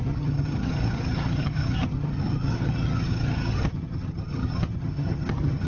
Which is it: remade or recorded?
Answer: remade